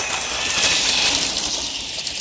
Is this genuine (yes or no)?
no